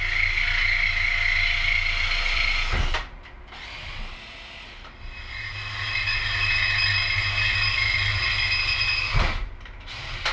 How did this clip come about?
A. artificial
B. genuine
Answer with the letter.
B